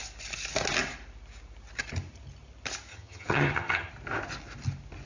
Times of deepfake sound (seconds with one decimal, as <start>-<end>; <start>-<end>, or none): 2.9-3.9